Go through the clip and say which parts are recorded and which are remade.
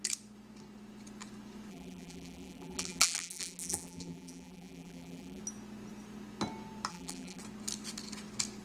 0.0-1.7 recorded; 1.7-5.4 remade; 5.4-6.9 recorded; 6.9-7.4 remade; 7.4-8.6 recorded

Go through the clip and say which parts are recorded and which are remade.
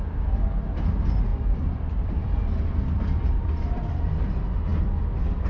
0.0-1.3 recorded; 1.3-3.9 remade; 3.9-5.5 recorded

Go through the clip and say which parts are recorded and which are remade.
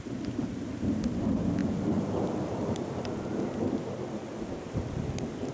0.0-1.6 recorded; 1.6-3.1 remade; 3.1-4.2 recorded; 4.2-4.8 remade; 4.8-5.5 recorded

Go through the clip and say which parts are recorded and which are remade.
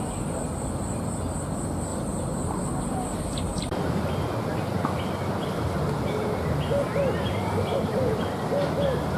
0.0-1.9 recorded; 1.9-2.7 remade; 2.7-3.5 recorded; 3.5-4.1 remade; 4.1-9.2 recorded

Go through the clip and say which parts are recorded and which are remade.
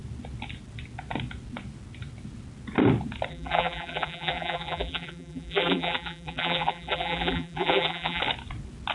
0.0-3.3 recorded; 3.3-8.2 remade; 8.2-8.9 recorded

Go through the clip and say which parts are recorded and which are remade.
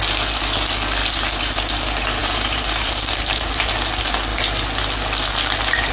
0.0-2.2 recorded; 2.2-3.7 remade; 3.7-5.9 recorded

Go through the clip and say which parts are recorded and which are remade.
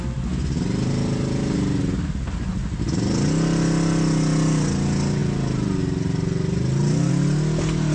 0.0-7.9 recorded